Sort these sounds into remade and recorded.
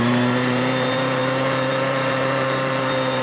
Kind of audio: remade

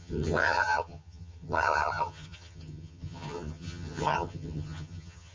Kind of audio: remade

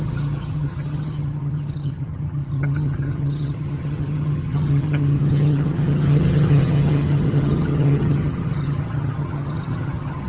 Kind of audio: remade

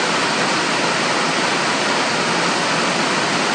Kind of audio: recorded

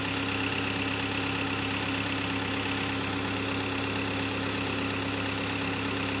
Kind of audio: recorded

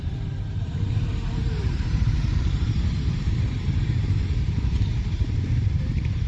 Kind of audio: remade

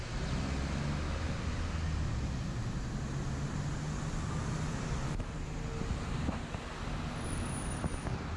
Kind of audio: recorded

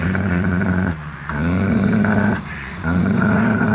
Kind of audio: remade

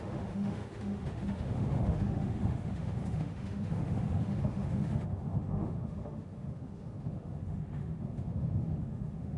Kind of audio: remade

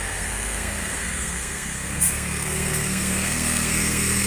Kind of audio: remade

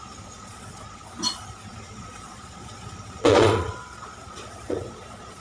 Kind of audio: remade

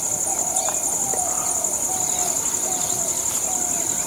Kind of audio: recorded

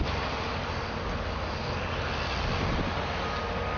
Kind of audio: recorded